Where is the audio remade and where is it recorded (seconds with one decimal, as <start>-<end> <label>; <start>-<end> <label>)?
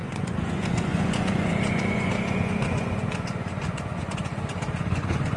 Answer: 0.0-5.4 remade